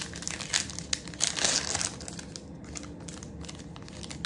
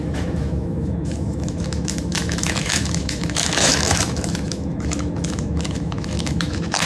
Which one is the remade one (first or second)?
second